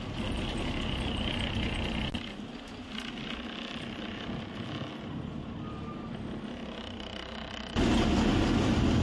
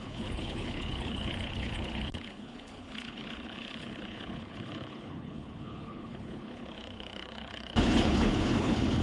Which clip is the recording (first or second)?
first